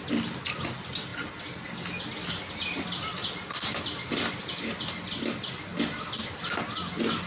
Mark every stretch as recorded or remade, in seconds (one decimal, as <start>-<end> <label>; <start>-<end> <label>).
0.0-3.2 recorded; 3.2-5.1 remade; 5.1-5.7 recorded; 5.7-6.2 remade; 6.2-7.3 recorded